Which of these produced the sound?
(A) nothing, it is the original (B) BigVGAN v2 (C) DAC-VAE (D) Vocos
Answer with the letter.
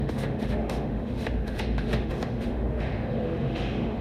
C